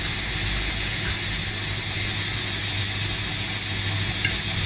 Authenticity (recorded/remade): recorded